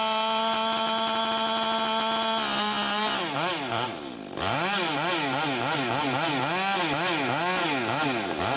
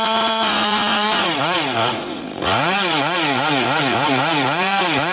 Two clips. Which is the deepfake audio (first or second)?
second